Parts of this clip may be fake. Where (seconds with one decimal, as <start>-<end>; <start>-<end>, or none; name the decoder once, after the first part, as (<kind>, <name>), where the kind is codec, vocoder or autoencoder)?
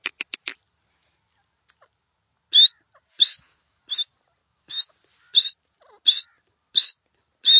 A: 3.3-3.8 (autoencoder, DAC-VAE); 4.4-4.9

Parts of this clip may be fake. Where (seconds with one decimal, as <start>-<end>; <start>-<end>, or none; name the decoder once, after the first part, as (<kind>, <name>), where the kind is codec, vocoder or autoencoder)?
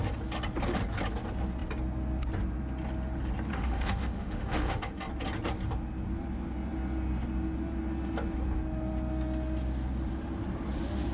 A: 3.5-4.8 (autoencoder, DAC-VAE)